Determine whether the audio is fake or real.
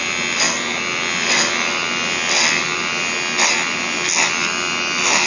real